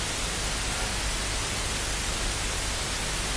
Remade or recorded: recorded